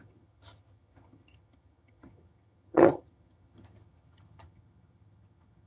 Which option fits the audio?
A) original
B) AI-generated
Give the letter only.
B